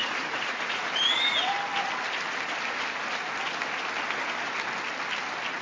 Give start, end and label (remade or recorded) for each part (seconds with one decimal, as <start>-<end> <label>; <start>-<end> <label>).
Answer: 0.0-0.8 remade; 0.8-5.6 recorded